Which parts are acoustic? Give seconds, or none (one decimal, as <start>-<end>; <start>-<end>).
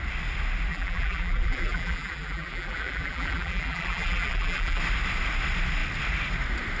0.0-0.7; 4.8-6.8